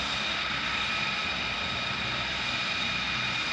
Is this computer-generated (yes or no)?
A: yes